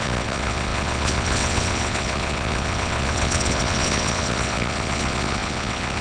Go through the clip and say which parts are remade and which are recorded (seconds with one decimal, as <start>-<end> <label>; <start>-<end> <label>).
0.0-6.0 remade